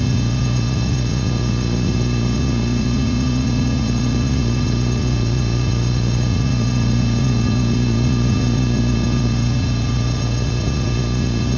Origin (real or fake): fake